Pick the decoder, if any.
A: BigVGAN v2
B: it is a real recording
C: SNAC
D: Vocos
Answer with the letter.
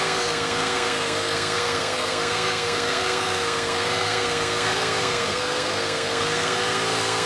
C